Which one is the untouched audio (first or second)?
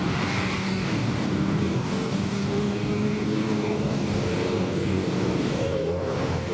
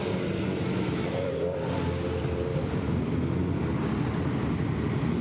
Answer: second